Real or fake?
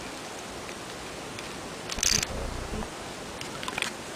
real